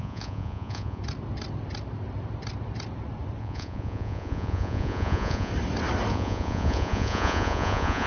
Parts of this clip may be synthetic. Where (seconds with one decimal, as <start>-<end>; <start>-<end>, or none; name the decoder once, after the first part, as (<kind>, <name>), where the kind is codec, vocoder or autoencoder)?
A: 0.0-1.0 (vocoder, Vocos); 3.4-5.5; 6.1-8.1

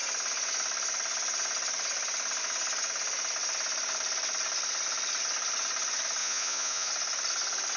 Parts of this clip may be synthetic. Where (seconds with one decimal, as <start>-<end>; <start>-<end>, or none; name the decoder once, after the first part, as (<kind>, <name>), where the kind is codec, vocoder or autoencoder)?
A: 6.2-6.9 (vocoder, Vocos)

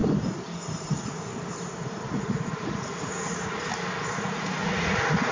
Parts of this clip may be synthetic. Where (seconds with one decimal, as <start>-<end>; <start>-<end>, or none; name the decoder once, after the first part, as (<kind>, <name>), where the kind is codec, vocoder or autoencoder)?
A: 0.8-1.3 (vocoder, Vocos); 2.0-3.7; 4.2-5.3

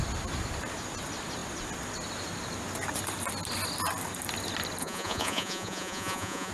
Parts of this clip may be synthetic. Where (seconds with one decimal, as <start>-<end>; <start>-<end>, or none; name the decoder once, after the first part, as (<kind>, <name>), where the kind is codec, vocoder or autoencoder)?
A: 4.8-6.5 (vocoder, Vocos)

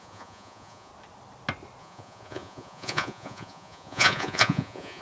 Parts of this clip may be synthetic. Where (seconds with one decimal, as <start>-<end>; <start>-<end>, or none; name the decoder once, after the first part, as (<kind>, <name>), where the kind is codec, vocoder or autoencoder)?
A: 0.0-0.9 (vocoder, Vocos); 1.8-5.0

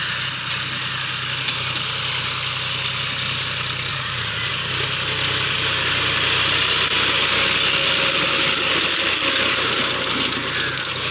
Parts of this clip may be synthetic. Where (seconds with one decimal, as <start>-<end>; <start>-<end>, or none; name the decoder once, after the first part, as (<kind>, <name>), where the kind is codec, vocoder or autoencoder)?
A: 3.9-4.5 (vocoder, Vocos)

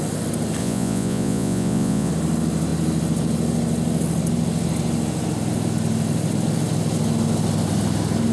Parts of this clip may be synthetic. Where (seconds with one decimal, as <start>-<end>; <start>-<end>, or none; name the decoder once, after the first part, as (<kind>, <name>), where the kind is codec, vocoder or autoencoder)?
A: 0.6-2.1 (vocoder, Vocos)

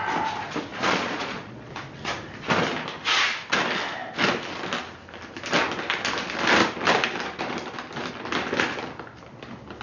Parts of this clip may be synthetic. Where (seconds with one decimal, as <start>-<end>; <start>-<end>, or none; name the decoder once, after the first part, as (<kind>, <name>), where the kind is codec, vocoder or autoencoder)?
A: 0.7-1.7 (vocoder, Vocos)